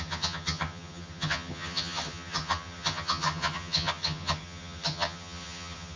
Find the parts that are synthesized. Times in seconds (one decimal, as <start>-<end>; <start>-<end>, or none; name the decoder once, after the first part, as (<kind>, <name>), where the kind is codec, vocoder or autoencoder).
0.0-6.0 (vocoder, HiFi-GAN)